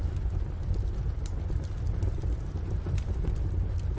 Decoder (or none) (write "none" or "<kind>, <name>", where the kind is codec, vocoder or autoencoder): none